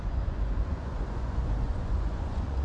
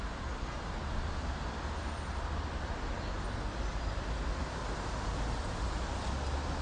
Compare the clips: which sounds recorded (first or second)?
second